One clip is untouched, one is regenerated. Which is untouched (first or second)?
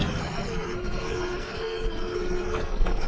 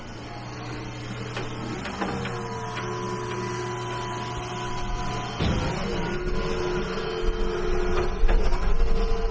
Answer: second